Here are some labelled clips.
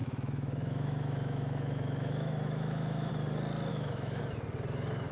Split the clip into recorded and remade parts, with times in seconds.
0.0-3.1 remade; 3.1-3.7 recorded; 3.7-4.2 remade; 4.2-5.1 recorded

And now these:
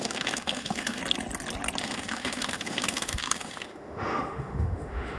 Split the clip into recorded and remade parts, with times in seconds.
0.0-1.0 remade; 1.0-1.8 recorded; 1.8-5.2 remade

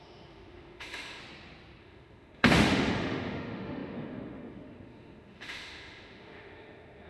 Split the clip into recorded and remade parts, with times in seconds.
0.0-1.2 remade; 1.2-1.8 recorded; 1.8-7.1 remade

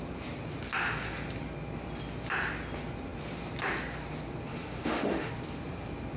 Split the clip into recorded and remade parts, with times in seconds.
0.0-4.5 recorded; 4.5-5.3 remade; 5.3-6.2 recorded

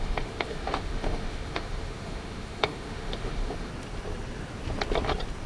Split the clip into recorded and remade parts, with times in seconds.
0.0-3.7 remade; 3.7-5.5 recorded

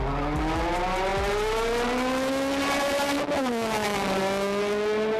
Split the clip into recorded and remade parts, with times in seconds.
0.0-5.2 recorded